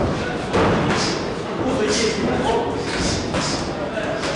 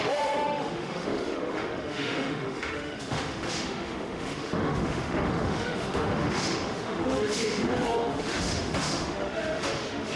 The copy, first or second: second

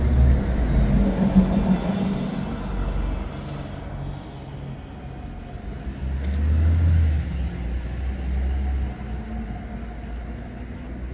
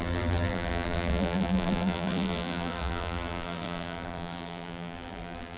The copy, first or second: second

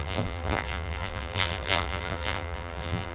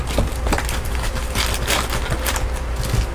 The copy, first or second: first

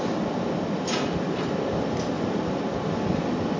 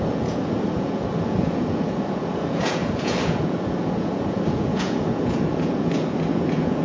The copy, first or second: second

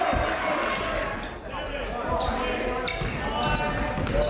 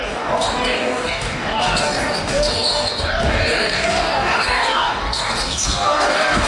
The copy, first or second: second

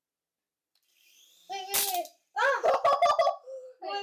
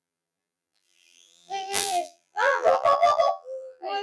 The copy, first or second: second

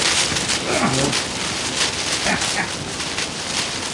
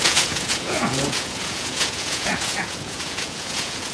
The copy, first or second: second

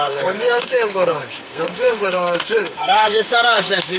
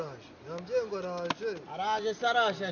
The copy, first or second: first